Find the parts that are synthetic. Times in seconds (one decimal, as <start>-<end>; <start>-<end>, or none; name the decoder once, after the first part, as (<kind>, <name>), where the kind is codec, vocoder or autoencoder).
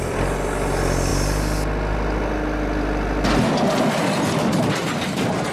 none